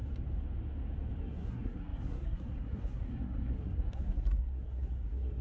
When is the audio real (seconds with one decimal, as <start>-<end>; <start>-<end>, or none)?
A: 0.0-1.2